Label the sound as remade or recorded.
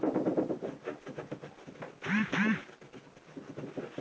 recorded